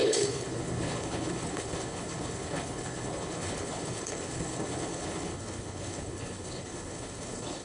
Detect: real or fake fake